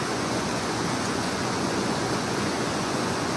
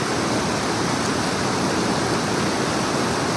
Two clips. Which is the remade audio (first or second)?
first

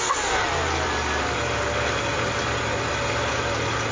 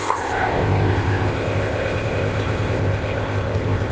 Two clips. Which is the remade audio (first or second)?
second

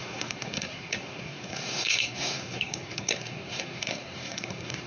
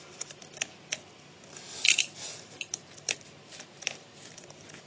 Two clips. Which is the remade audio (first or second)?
first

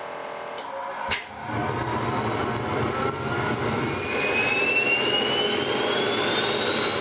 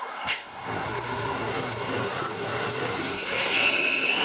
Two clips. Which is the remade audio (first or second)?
second